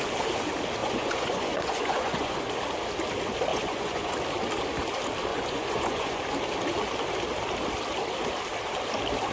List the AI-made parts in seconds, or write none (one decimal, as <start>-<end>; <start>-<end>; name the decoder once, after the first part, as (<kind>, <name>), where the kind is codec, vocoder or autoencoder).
0.8-2.5 (vocoder, Vocos); 3.5-4.1; 5.3-6.2